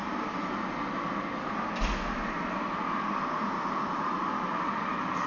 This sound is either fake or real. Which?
real